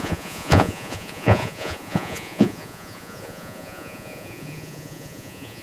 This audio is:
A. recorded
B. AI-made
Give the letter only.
B